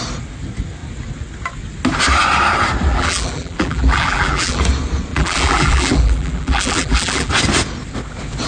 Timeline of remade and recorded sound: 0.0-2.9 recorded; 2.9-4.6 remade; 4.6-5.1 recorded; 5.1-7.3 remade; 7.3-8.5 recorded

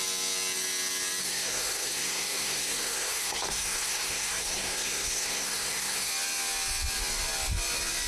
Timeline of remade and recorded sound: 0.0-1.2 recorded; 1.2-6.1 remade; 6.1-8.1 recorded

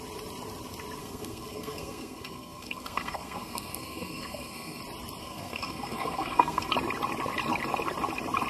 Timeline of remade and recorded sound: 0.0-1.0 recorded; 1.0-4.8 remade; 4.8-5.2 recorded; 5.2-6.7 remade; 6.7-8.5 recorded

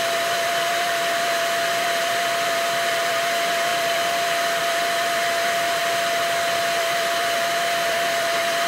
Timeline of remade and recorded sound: 0.0-5.8 remade; 5.8-6.8 recorded; 6.8-8.7 remade

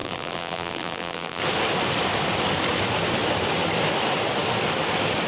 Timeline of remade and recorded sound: 0.0-1.4 remade; 1.4-5.3 recorded